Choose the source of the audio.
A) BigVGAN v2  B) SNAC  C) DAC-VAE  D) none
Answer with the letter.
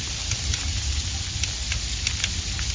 D